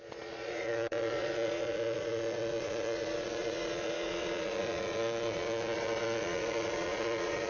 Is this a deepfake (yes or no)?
yes